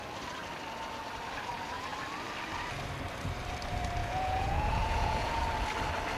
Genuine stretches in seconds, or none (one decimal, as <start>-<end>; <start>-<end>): 0.0-4.0; 5.4-6.2